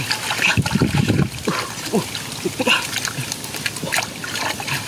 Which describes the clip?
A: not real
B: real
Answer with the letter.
B